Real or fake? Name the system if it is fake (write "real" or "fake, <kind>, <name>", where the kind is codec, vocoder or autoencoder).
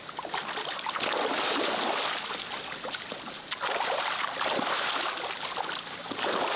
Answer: real